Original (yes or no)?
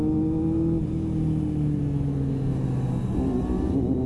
yes